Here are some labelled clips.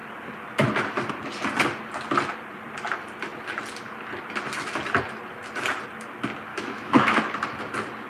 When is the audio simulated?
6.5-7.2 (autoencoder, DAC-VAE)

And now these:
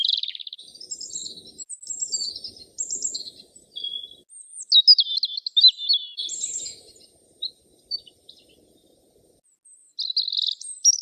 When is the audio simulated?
2.7-4.1 (vocoder, BigVGAN v2); 6.3-8.6

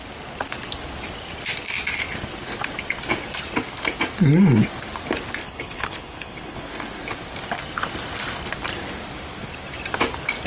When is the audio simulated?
5.4-6.7 (codec, HILCodec)

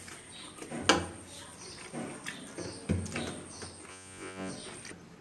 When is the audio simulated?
3.9-4.5 (vocoder, Vocos)